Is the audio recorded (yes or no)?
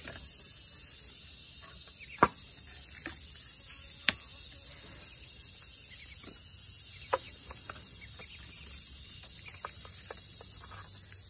yes